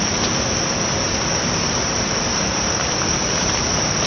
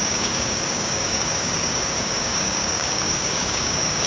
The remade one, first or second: second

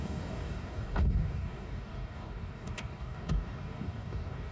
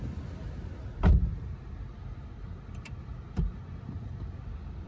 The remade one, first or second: first